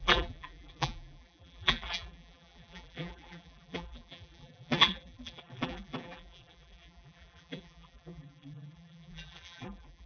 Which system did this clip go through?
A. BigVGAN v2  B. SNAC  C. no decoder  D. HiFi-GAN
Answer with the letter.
A